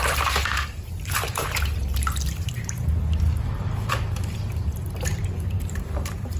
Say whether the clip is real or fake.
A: fake